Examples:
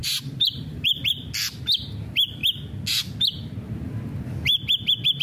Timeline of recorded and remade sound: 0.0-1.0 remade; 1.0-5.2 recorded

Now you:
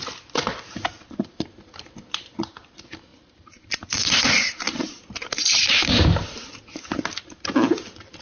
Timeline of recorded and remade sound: 0.0-3.1 recorded; 3.1-6.5 remade; 6.5-8.2 recorded

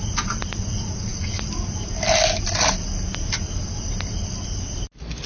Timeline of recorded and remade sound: 0.0-5.3 recorded

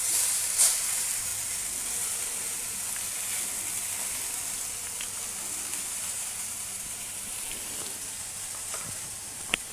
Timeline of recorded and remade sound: 0.0-1.3 remade; 1.3-5.9 recorded; 5.9-9.7 remade

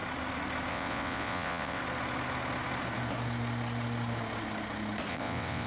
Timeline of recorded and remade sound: 0.0-0.7 recorded; 0.7-1.8 remade; 1.8-5.1 recorded; 5.1-5.7 remade

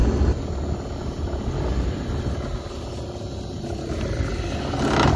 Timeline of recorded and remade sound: 0.0-5.2 recorded